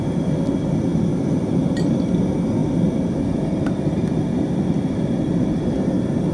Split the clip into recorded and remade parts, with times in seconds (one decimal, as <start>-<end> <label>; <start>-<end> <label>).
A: 0.0-6.3 recorded